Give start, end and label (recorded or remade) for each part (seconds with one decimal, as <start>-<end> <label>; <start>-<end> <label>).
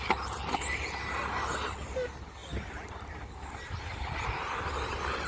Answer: 0.0-5.3 recorded